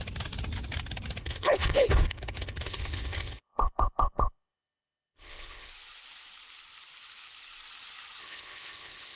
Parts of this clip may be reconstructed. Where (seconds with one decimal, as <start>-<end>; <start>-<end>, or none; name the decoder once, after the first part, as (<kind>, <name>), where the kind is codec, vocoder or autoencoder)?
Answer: 1.2-5.7 (codec, HILCodec); 8.2-9.2